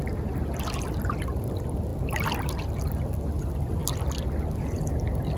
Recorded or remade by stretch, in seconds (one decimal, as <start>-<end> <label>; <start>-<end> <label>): 0.0-5.4 recorded